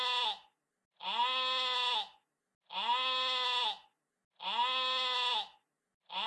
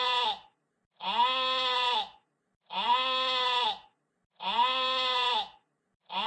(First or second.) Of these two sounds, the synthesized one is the second